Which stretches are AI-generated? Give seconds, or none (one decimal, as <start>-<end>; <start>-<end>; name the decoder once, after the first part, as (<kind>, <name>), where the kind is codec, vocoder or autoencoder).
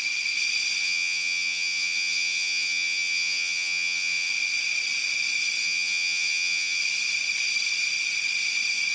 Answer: 0.8-4.3 (vocoder, HiFi-GAN); 5.6-6.8